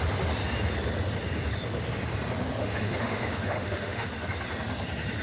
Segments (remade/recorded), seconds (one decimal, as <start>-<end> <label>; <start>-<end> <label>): 0.0-2.6 recorded; 2.6-4.1 remade; 4.1-5.2 recorded